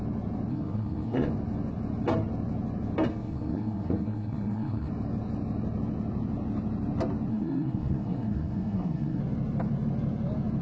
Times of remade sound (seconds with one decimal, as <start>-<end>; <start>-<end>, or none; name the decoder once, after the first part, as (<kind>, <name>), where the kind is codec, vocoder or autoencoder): 0.5-1.3 (codec, SNAC); 3.1-4.9; 7.3-9.2